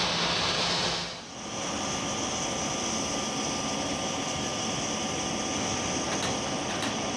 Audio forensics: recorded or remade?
recorded